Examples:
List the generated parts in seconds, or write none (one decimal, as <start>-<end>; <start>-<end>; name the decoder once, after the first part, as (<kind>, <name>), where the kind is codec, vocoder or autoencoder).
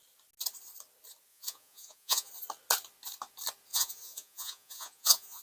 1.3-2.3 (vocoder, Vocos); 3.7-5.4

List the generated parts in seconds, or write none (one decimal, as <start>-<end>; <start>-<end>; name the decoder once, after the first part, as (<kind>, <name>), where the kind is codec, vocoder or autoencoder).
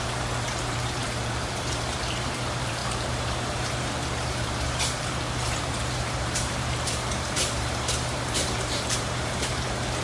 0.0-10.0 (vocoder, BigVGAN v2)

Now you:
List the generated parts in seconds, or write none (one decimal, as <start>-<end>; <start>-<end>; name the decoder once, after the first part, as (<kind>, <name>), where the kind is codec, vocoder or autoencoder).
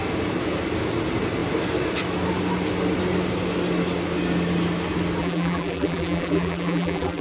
5.2-7.2 (vocoder, BigVGAN v2)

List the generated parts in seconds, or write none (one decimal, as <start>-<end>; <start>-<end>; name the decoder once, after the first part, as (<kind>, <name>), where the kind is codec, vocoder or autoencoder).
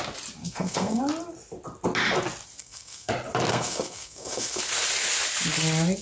0.4-1.0 (codec, SNAC); 2.6-3.1; 3.5-4.6